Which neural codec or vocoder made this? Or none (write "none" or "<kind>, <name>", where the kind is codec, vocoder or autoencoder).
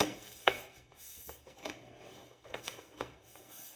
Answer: codec, SNAC